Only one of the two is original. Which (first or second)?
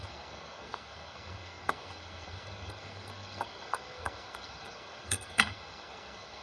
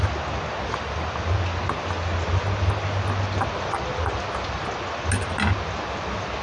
second